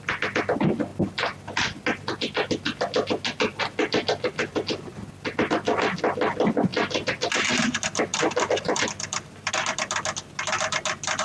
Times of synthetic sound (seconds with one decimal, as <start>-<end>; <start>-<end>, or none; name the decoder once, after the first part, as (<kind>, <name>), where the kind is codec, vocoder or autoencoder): 6.7-7.3 (vocoder, BigVGAN v2); 8.1-9.5